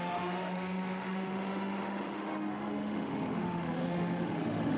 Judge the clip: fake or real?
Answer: fake